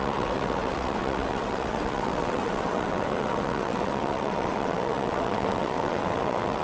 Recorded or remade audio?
remade